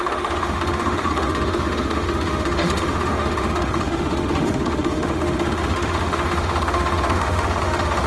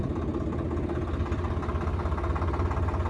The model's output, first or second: first